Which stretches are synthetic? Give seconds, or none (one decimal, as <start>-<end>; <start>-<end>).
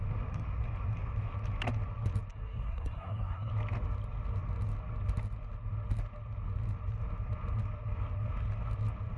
2.3-3.5